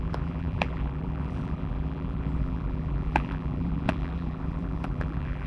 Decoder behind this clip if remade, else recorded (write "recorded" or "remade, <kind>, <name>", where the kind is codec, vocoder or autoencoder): remade, vocoder, BigVGAN v2